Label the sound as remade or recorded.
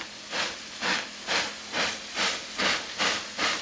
recorded